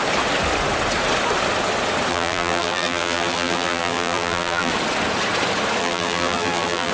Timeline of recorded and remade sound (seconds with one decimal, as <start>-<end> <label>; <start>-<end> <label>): 0.0-2.1 recorded; 2.1-4.7 remade; 4.7-5.8 recorded; 5.8-6.9 remade